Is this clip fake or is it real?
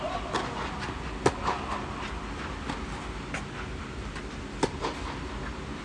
real